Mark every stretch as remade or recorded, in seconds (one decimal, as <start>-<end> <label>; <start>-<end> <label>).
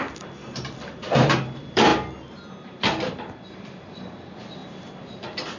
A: 0.0-1.9 remade; 1.9-3.5 recorded; 3.5-5.6 remade